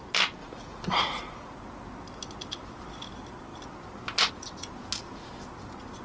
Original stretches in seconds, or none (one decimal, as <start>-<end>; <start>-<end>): 0.0-0.4; 1.6-6.0